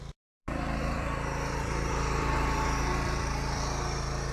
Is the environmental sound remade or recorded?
remade